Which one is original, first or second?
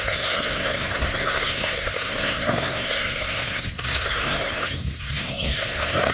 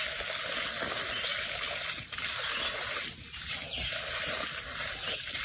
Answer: second